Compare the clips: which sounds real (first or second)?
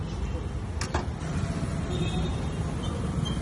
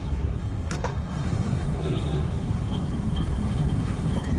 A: first